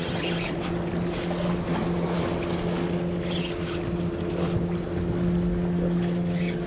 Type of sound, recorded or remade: recorded